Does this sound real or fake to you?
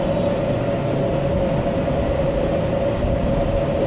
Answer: real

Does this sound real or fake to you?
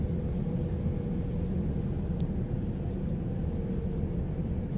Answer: real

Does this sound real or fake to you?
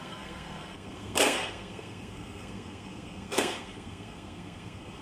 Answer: fake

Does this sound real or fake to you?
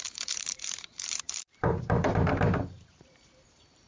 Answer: fake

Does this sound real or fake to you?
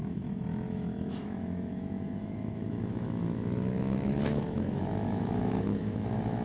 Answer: fake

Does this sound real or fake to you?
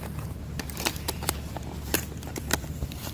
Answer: fake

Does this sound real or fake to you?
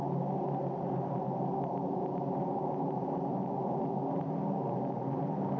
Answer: fake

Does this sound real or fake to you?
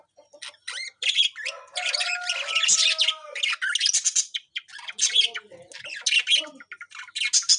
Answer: real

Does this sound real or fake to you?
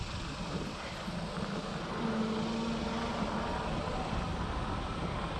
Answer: real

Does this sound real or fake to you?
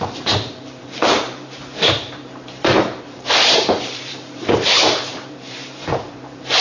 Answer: fake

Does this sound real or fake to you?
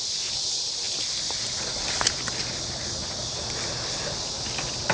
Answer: real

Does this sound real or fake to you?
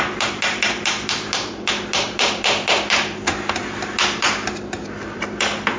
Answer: real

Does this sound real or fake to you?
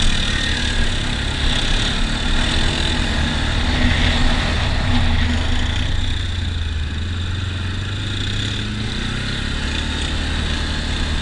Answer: real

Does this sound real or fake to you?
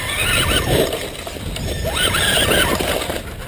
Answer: real